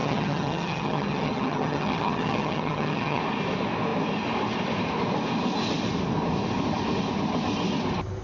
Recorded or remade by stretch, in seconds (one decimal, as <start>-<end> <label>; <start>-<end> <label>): 0.0-3.2 remade; 3.2-8.2 recorded